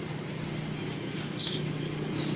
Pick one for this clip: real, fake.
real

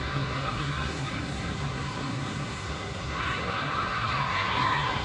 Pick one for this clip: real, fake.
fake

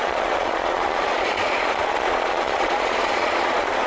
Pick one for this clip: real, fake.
fake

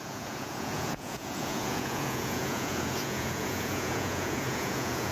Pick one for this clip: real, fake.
fake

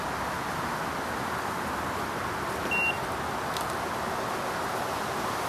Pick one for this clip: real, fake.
real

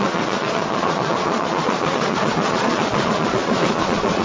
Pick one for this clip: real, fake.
fake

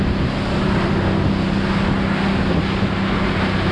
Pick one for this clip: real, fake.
real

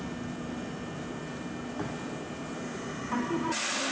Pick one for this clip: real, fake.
real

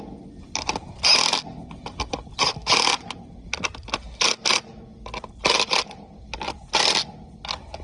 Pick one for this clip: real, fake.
real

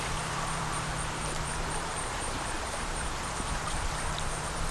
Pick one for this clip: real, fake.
fake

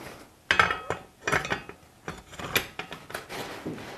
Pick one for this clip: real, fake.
real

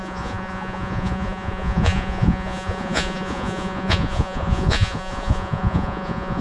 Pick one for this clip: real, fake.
fake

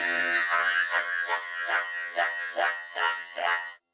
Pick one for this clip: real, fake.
fake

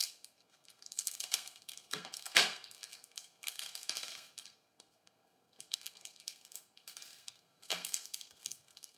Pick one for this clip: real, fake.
fake